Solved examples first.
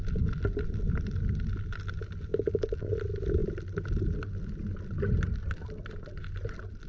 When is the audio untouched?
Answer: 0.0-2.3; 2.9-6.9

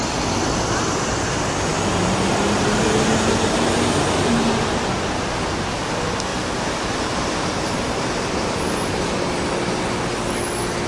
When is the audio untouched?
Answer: 0.0-6.3; 10.1-10.9

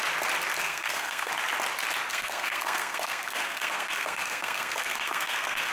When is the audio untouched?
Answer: 0.0-0.6; 1.3-2.1

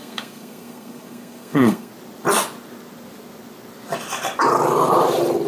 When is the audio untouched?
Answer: 1.9-5.5

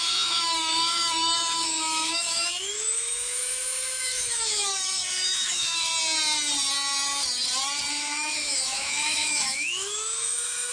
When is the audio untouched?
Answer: 5.9-7.9

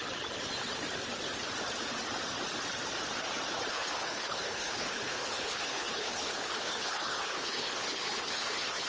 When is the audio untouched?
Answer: 0.0-3.7

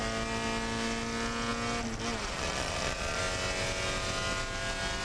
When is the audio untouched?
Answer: 0.0-2.3; 3.2-5.0

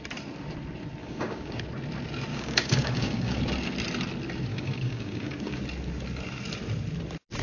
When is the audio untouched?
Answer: 0.0-1.0; 1.6-2.3; 3.4-4.5; 5.6-7.4